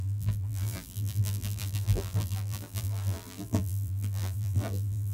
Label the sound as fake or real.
fake